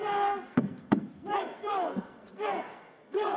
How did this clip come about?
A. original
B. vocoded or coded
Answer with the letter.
B